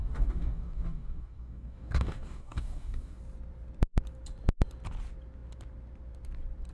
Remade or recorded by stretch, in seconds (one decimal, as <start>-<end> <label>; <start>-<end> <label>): 0.0-3.2 remade; 3.2-6.7 recorded